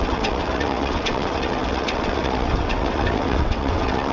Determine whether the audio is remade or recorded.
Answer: remade